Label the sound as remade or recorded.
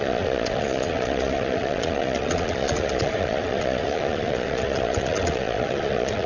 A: remade